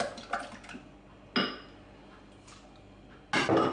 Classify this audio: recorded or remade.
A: recorded